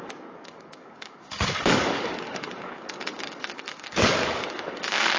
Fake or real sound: fake